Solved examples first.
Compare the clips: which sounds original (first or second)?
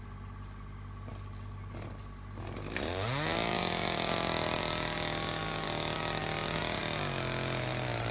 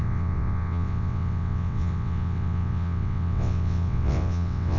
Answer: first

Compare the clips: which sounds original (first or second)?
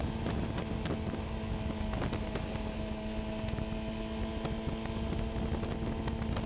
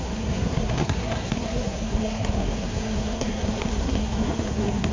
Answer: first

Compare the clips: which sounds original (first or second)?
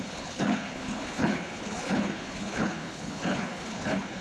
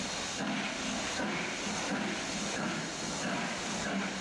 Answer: second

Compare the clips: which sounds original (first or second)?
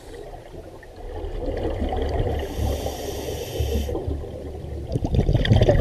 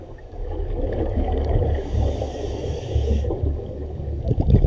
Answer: first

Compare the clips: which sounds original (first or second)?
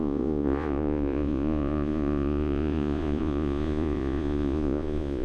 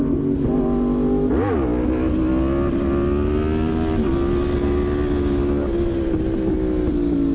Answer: second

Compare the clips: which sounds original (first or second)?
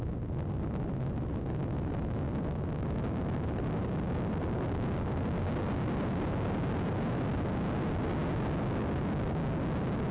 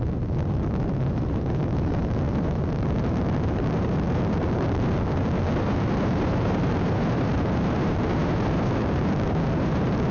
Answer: first